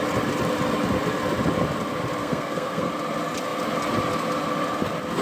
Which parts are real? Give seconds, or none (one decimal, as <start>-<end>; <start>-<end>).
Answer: 0.0-2.2; 2.9-5.2